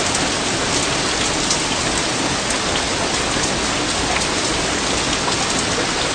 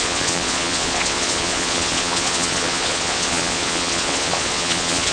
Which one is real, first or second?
first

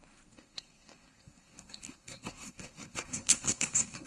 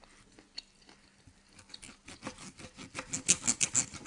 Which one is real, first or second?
second